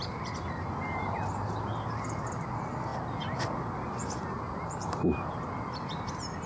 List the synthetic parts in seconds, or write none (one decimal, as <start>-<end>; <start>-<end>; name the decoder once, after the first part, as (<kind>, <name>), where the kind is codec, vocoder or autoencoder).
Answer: none